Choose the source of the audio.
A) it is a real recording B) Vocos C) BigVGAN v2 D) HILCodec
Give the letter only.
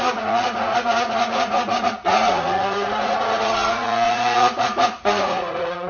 B